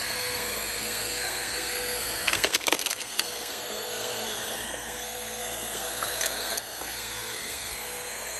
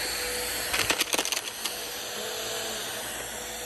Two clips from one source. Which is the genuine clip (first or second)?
second